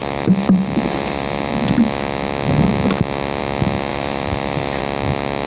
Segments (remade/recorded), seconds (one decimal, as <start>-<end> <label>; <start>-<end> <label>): 0.0-1.5 remade; 1.5-3.9 recorded; 3.9-4.8 remade; 4.8-5.5 recorded